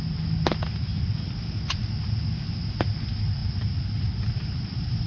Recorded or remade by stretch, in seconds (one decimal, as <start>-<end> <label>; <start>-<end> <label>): 0.0-5.1 recorded